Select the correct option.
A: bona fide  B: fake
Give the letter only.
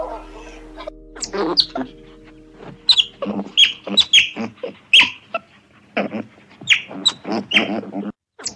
A